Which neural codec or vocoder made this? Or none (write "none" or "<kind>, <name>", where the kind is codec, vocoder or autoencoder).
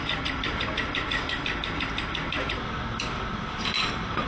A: none